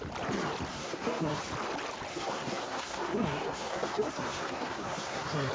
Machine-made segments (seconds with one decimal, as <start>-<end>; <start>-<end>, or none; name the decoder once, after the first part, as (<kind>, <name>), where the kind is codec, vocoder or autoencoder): 0.7-1.4 (codec, SNAC); 2.1-5.5